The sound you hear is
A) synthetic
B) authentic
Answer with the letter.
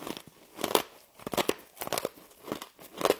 B